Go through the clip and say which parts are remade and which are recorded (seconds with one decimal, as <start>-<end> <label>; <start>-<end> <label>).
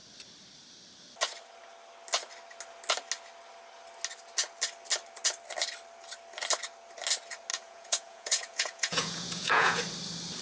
0.0-7.5 recorded; 7.5-9.8 remade; 9.8-10.4 recorded